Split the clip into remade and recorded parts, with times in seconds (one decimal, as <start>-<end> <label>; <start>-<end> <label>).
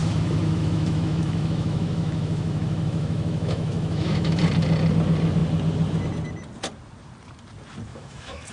0.0-4.4 remade; 4.4-7.9 recorded; 7.9-8.5 remade